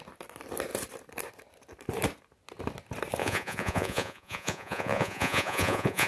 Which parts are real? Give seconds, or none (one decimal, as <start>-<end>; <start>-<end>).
0.0-3.2